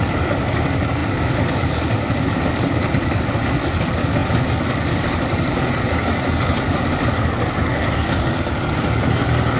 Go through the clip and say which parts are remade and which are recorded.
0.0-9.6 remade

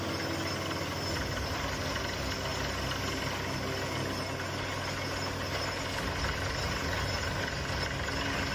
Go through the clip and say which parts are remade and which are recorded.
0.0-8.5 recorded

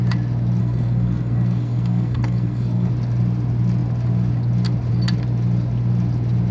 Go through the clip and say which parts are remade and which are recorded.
0.0-0.6 recorded; 0.6-2.9 remade; 2.9-6.5 recorded

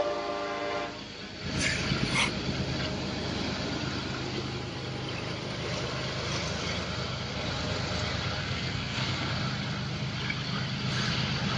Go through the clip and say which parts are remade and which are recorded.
0.0-8.4 recorded; 8.4-9.3 remade; 9.3-11.6 recorded